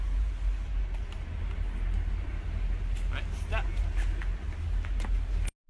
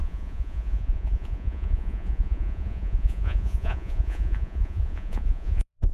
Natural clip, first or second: first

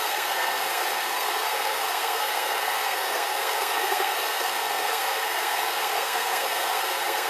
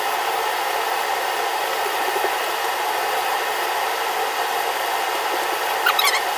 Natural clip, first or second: second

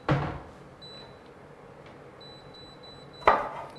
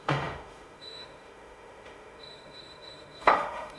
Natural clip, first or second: first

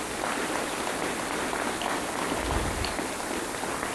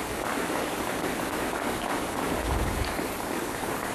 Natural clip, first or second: first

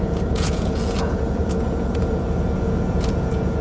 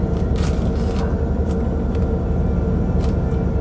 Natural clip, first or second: second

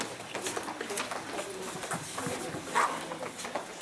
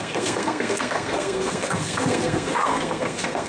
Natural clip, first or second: first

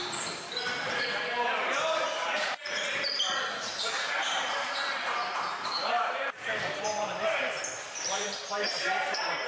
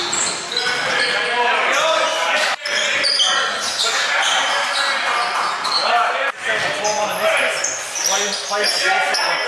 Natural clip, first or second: second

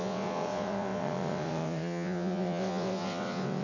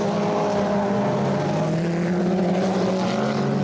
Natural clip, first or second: second